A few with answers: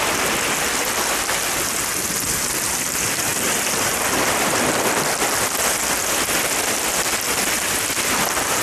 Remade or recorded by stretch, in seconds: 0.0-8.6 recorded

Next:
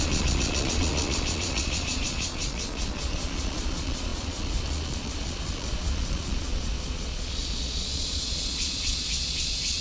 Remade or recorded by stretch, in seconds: 0.0-9.8 remade

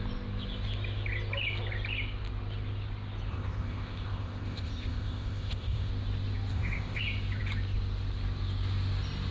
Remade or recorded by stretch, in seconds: 0.0-3.3 recorded; 3.3-5.9 remade; 5.9-6.5 recorded; 6.5-7.0 remade; 7.0-9.3 recorded

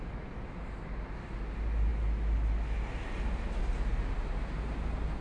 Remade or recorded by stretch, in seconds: 0.0-5.2 recorded